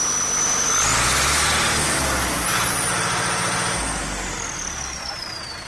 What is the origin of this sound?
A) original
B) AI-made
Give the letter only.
A